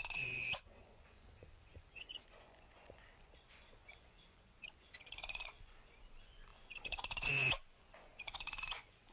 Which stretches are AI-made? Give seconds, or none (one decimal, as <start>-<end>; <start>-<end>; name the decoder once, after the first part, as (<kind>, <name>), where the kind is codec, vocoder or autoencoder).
0.0-9.1 (vocoder, Vocos)